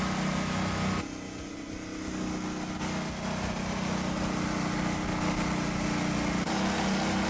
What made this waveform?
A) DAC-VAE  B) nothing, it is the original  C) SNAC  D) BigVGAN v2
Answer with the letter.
B